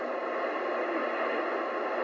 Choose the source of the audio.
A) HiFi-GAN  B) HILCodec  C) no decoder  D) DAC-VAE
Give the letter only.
C